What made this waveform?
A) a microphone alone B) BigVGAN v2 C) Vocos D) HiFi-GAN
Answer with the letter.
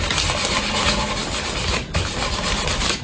A